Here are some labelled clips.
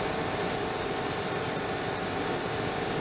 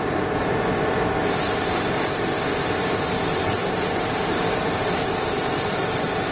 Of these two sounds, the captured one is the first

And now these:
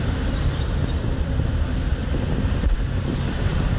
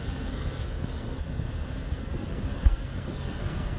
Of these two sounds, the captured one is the first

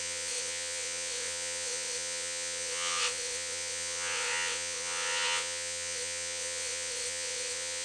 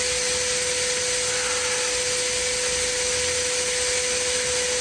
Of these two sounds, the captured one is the second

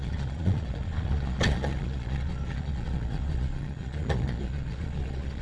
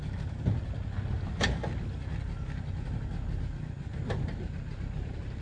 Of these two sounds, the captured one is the second